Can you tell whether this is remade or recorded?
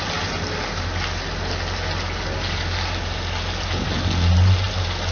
recorded